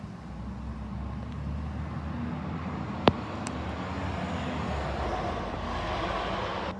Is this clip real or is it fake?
real